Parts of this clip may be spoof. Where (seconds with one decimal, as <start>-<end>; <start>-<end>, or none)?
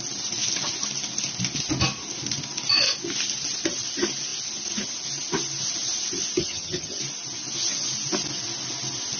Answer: 6.4-7.0